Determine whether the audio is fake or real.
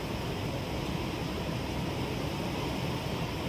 real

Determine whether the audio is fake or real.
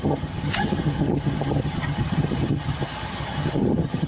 fake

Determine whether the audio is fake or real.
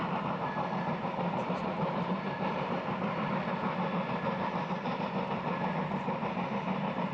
real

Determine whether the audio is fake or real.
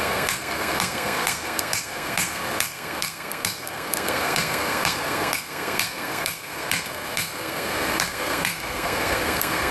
fake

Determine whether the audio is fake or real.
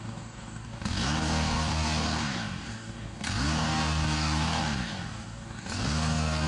fake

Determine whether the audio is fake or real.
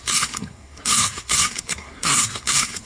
fake